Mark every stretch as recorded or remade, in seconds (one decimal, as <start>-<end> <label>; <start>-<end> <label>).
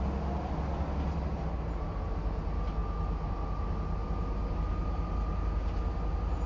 0.0-6.5 recorded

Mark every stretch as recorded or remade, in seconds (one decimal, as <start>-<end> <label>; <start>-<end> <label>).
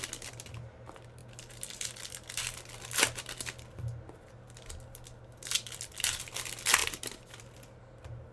0.0-8.3 recorded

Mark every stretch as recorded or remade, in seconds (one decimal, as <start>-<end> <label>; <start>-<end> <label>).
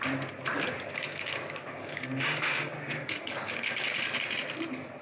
0.0-0.9 recorded; 0.9-3.9 remade; 3.9-5.0 recorded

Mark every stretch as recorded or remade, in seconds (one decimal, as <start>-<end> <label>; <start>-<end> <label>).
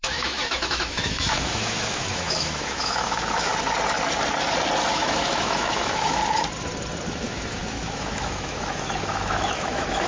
0.0-3.5 remade; 3.5-4.9 recorded; 4.9-6.2 remade; 6.2-7.1 recorded; 7.1-10.1 remade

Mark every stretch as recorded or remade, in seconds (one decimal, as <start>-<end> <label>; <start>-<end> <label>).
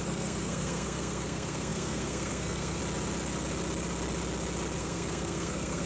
0.0-2.8 remade; 2.8-4.8 recorded; 4.8-5.9 remade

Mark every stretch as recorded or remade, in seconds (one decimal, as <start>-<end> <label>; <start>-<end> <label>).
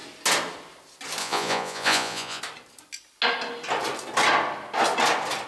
0.0-1.2 recorded; 1.2-2.4 remade; 2.4-5.5 recorded